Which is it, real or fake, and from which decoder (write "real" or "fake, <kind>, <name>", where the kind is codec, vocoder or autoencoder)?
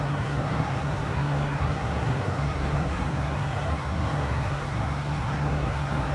fake, codec, SNAC